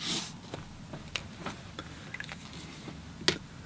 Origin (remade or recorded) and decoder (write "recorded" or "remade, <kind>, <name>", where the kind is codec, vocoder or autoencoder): recorded